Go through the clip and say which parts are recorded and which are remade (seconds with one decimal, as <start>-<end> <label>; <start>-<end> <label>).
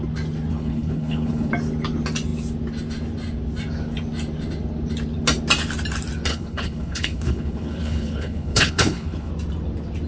0.0-0.5 recorded; 0.5-1.5 remade; 1.5-6.3 recorded; 6.3-9.3 remade; 9.3-10.1 recorded